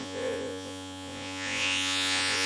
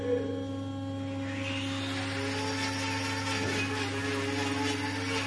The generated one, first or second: first